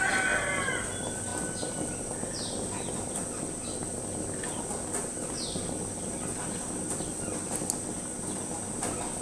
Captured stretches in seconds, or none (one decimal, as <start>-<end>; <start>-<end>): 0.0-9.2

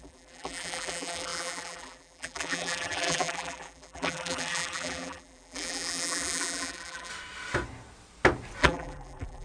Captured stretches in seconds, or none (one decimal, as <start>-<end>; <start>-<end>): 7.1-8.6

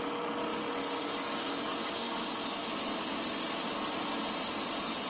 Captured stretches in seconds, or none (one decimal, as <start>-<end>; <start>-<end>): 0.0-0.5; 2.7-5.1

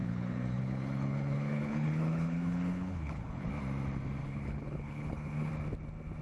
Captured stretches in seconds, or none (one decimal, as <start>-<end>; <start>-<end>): 3.5-4.2; 5.5-6.2

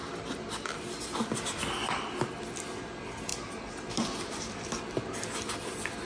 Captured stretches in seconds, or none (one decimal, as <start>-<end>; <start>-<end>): 0.0-1.8; 2.6-3.3

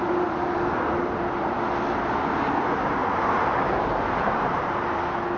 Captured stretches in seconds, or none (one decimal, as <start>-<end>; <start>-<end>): 0.0-3.0; 5.0-5.4